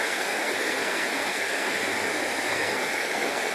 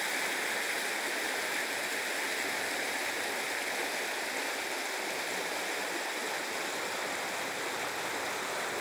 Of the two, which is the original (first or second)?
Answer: second